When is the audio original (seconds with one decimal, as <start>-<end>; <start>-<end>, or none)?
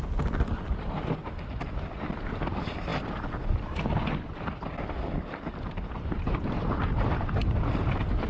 0.0-8.3